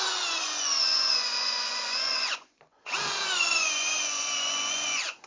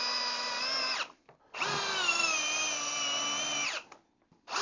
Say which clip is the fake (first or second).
first